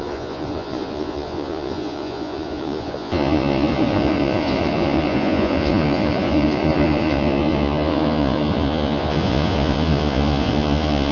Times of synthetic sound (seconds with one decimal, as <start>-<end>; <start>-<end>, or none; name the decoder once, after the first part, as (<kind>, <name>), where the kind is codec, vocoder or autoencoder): 0.0-11.1 (vocoder, Vocos)